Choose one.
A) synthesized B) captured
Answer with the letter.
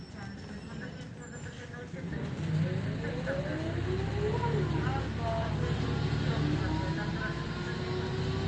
B